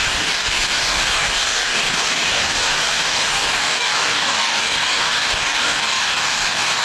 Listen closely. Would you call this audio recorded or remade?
remade